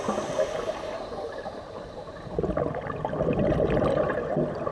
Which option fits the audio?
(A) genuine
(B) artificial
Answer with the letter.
A